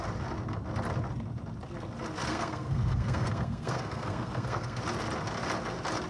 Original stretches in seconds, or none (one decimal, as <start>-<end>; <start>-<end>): 0.0-2.3; 4.8-6.1